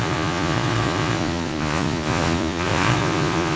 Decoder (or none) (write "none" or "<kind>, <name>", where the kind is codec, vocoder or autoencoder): vocoder, Vocos